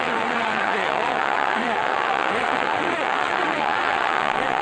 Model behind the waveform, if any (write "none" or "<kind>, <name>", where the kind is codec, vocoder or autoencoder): vocoder, WaveNeXt